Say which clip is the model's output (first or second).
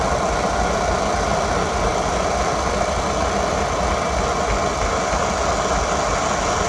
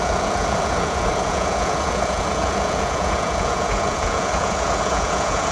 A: second